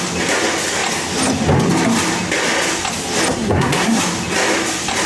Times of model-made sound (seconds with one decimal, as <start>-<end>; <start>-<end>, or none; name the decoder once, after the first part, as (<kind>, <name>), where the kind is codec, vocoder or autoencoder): 3.3-4.0 (codec, SNAC)